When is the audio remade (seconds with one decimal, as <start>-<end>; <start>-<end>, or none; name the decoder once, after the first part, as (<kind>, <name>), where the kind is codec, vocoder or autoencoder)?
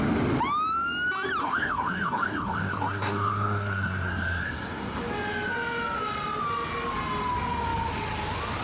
1.4-5.0 (codec, SNAC)